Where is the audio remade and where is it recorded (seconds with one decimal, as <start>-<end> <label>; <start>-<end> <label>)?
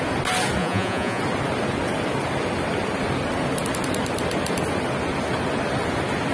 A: 0.0-0.6 recorded; 0.6-1.2 remade; 1.2-6.3 recorded